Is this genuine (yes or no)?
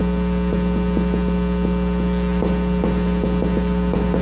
yes